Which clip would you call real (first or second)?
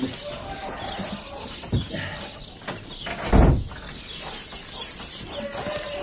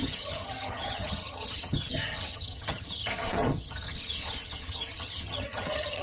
first